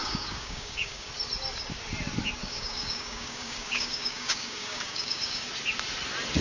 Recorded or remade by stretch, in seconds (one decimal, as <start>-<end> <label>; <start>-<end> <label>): 0.0-1.1 remade; 1.1-2.4 recorded; 2.4-5.5 remade; 5.5-6.4 recorded